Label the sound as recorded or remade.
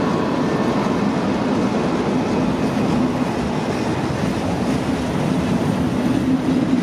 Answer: recorded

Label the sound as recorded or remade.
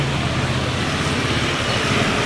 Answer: recorded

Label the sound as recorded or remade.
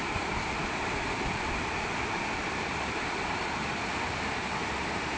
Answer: remade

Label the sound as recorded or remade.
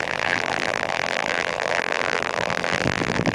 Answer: remade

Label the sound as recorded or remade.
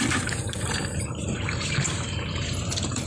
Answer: remade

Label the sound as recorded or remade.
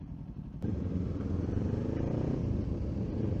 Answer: remade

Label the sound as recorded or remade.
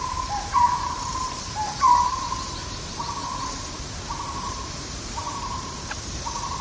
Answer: remade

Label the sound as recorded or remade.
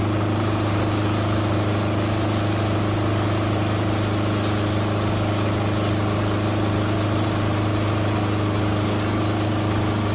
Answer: recorded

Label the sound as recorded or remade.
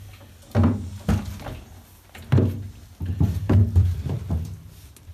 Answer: recorded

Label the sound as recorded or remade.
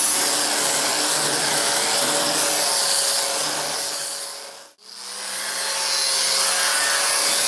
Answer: recorded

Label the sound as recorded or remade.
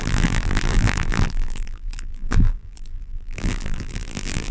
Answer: remade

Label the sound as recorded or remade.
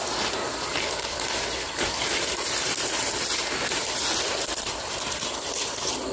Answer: recorded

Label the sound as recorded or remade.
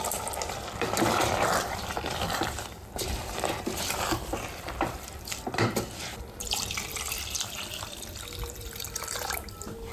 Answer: remade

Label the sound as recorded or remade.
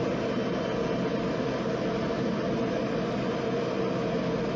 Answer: recorded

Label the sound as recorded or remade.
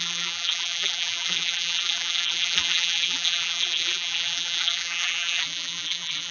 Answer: remade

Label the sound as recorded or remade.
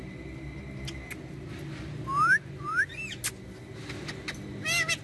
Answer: recorded